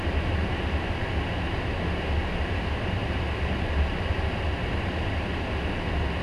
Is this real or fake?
real